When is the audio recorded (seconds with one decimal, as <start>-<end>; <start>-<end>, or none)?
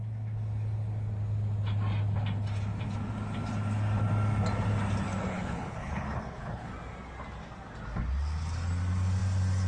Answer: 0.0-5.3; 6.7-9.7